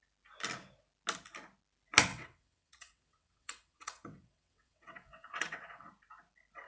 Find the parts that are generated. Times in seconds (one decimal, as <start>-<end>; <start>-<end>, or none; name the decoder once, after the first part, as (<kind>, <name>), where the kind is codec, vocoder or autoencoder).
2.1-5.9 (vocoder, WaveNeXt)